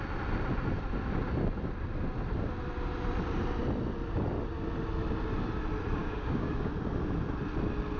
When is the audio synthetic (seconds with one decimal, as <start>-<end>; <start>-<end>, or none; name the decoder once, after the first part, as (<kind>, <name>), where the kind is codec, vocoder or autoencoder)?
6.0-6.7 (codec, DAC)